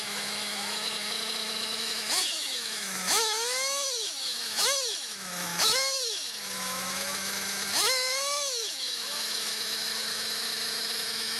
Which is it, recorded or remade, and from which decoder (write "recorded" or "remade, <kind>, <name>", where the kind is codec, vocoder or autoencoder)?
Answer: remade, autoencoder, DAC-VAE